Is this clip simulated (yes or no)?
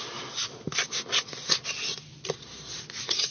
no